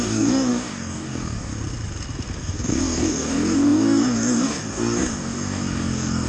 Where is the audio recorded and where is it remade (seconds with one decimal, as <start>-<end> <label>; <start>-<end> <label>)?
0.0-1.5 remade; 1.5-2.4 recorded; 2.4-6.3 remade